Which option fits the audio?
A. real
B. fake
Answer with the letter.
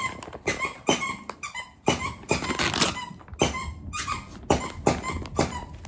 A